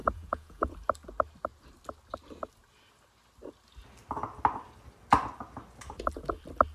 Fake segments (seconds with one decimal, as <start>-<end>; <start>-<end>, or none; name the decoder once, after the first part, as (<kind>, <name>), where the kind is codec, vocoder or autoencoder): 0.0-0.7 (vocoder, Vocos)